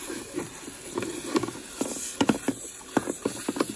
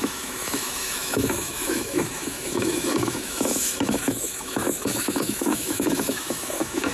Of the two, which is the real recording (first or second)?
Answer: first